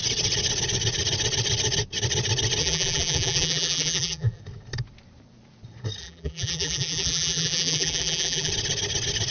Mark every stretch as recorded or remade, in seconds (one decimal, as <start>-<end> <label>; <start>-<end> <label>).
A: 0.0-2.6 recorded; 2.6-4.4 remade; 4.4-6.0 recorded; 6.0-8.5 remade; 8.5-9.3 recorded